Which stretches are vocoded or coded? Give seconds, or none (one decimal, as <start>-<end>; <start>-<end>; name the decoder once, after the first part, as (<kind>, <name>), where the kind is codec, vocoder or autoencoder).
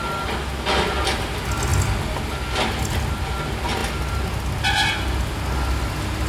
none